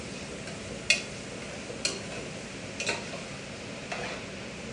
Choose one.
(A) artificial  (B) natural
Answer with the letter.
B